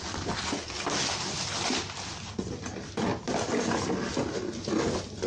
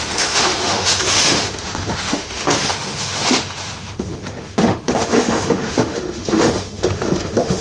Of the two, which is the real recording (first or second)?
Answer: first